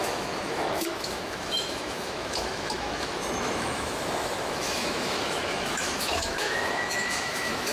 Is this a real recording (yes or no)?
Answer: no